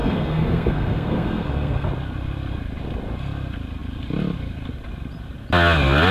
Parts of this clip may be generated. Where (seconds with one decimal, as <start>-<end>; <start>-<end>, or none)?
0.0-1.9